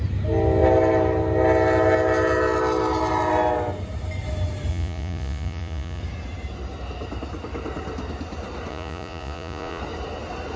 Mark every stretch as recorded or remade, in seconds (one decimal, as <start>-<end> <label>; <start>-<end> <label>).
0.0-4.7 recorded; 4.7-6.0 remade; 6.0-8.7 recorded; 8.7-9.8 remade; 9.8-10.6 recorded